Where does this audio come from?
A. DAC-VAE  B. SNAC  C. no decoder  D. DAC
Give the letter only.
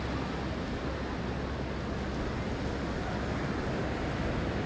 C